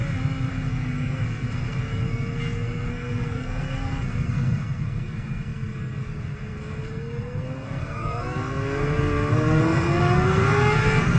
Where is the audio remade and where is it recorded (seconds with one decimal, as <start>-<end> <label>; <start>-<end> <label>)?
0.0-0.5 recorded; 0.5-11.2 remade